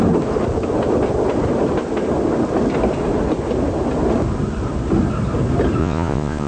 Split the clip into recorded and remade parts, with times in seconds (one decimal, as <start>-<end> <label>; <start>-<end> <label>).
0.0-5.8 recorded; 5.8-6.5 remade